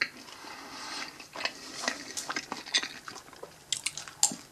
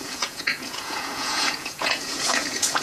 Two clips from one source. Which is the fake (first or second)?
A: second